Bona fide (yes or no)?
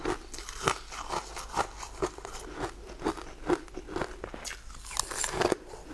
yes